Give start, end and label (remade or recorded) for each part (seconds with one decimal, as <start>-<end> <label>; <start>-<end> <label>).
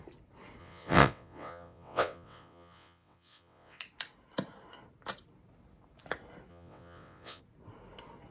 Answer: 0.0-0.6 recorded; 0.6-3.8 remade; 3.8-6.5 recorded; 6.5-7.4 remade; 7.4-8.3 recorded